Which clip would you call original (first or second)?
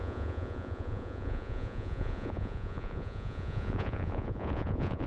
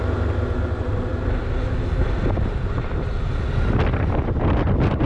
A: second